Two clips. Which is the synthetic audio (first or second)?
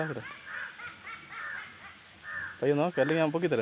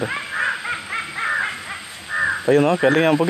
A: first